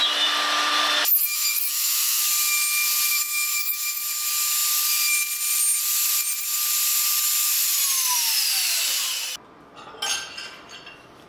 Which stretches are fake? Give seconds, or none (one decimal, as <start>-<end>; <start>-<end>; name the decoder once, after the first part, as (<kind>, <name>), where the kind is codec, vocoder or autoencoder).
1.2-2.2 (autoencoder, DAC-VAE); 3.1-4.0